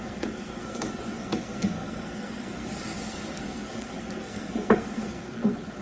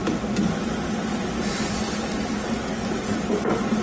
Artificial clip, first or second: first